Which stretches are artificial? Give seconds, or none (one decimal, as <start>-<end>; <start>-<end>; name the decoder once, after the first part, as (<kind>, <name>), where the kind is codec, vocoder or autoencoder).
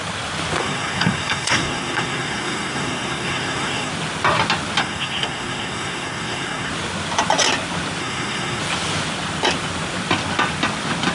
0.6-3.9 (codec, SNAC); 4.8-6.7; 8.0-8.6